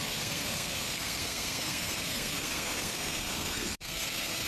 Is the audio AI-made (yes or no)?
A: yes